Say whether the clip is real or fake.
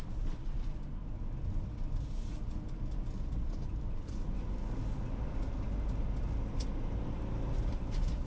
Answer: real